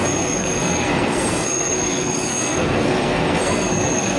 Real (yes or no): no